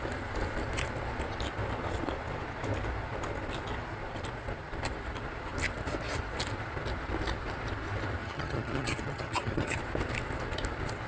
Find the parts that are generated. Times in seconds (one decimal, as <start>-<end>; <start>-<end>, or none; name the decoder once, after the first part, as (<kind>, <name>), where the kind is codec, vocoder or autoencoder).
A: 8.2-9.8 (vocoder, HiFi-GAN)